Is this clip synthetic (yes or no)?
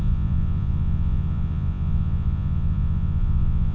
yes